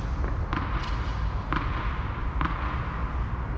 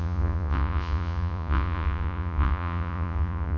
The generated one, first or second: second